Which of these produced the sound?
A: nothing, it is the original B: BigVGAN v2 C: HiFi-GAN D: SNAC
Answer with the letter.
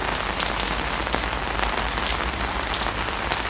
A